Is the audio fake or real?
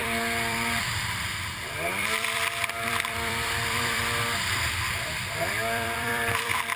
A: fake